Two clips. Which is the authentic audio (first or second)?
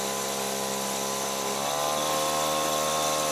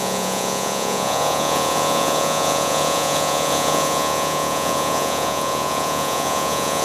first